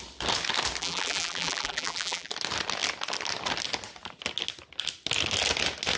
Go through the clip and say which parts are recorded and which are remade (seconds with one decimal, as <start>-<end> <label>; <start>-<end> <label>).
0.0-0.8 recorded; 0.8-2.3 remade; 2.3-6.0 recorded